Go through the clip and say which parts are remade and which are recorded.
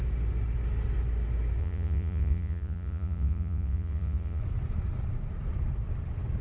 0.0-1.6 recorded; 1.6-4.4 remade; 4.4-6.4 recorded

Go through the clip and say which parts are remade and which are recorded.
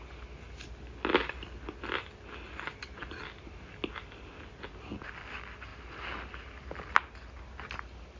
0.0-8.2 recorded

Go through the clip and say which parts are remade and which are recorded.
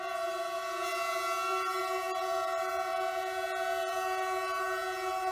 0.0-5.3 remade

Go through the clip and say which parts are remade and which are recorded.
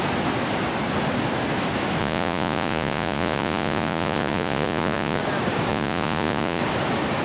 0.0-2.0 recorded; 2.0-5.2 remade; 5.2-5.7 recorded; 5.7-6.6 remade; 6.6-7.2 recorded